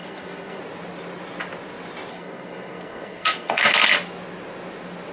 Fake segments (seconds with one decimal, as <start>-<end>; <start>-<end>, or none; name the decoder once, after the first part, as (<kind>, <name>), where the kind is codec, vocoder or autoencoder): 0.0-0.6 (codec, SNAC); 2.1-3.7